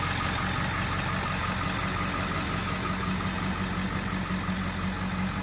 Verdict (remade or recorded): recorded